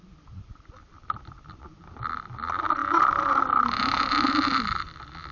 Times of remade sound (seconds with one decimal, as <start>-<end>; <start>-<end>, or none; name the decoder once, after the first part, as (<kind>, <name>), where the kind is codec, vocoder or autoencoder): 0.0-5.3 (vocoder, BigVGAN v2)